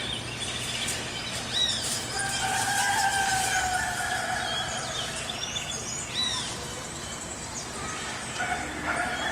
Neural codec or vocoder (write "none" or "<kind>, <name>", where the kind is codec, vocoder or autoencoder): vocoder, BigVGAN v2